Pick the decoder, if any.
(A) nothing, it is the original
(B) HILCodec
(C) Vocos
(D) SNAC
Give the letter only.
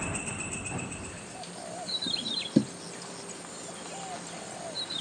A